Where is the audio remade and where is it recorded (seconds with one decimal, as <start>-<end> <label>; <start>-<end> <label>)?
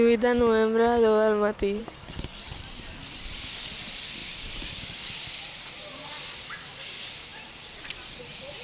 0.0-8.6 recorded